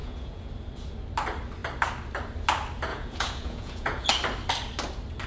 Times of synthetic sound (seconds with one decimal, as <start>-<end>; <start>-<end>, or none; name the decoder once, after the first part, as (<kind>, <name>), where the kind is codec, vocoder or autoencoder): 0.0-0.5 (vocoder, Vocos); 2.9-4.1